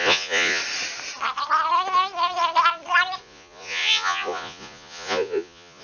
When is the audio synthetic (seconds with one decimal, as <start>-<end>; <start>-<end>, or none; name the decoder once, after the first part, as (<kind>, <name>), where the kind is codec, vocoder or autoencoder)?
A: 0.0-0.6 (vocoder, Vocos); 3.2-5.8